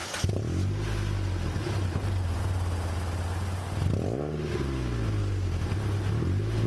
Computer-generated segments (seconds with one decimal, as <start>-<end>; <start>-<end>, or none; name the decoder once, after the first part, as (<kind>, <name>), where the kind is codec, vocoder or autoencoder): none